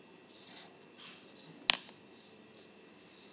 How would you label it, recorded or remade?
recorded